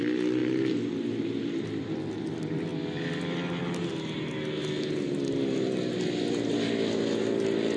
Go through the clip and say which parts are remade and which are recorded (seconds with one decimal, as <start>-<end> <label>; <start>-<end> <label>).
0.0-2.7 remade; 2.7-7.8 recorded